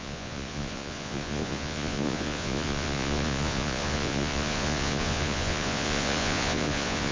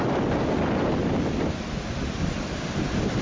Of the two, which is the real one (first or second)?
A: second